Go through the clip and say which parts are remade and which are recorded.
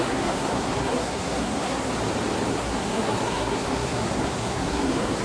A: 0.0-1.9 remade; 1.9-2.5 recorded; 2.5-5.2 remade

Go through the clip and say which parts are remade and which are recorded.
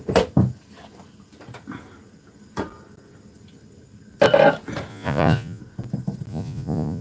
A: 0.0-4.9 recorded; 4.9-5.6 remade; 5.6-6.3 recorded; 6.3-7.0 remade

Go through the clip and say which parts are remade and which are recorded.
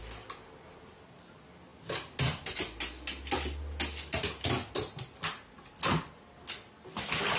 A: 0.0-7.4 recorded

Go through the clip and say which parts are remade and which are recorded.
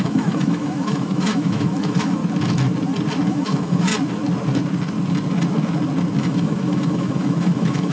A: 0.0-2.2 remade; 2.2-3.3 recorded; 3.3-3.9 remade; 3.9-6.2 recorded; 6.2-7.9 remade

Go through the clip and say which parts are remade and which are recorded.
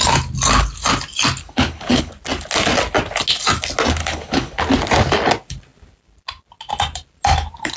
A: 0.0-1.4 recorded; 1.4-2.1 remade; 2.1-4.0 recorded; 4.0-4.6 remade; 4.6-7.8 recorded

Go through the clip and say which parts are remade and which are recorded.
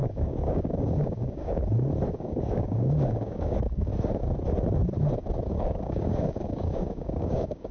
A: 0.0-1.6 remade; 1.6-2.1 recorded; 2.1-3.9 remade; 3.9-5.5 recorded; 5.5-7.7 remade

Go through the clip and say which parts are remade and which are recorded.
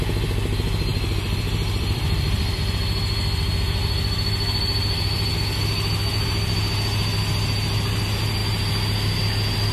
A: 0.0-0.9 recorded; 0.9-2.6 remade; 2.6-9.7 recorded